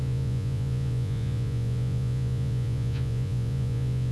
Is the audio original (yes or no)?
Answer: no